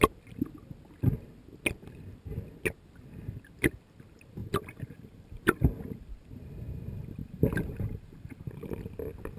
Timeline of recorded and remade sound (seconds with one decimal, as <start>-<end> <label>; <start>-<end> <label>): 0.0-4.4 recorded; 4.4-5.8 remade; 5.8-7.2 recorded; 7.2-8.8 remade; 8.8-9.4 recorded